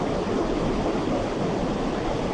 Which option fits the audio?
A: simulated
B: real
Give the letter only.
B